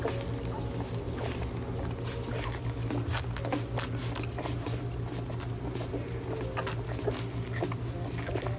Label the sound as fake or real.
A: real